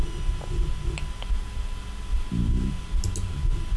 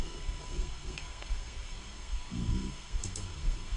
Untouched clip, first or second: first